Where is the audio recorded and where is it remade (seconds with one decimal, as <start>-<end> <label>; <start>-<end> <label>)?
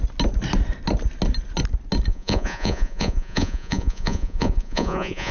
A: 0.0-2.1 recorded; 2.1-5.3 remade